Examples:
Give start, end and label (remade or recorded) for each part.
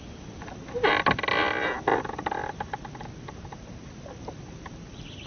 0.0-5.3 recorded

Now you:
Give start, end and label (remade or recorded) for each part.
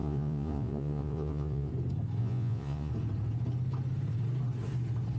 0.0-1.7 remade; 1.7-2.2 recorded; 2.2-2.9 remade; 2.9-5.2 recorded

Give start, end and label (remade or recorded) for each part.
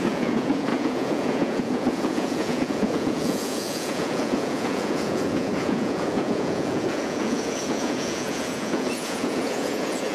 0.0-10.1 remade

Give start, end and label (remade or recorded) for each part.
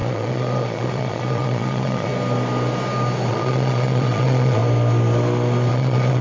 0.0-2.1 remade; 2.1-3.3 recorded; 3.3-4.6 remade; 4.6-5.7 recorded; 5.7-6.2 remade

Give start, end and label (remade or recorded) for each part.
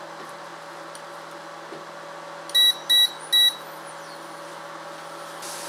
0.0-5.7 recorded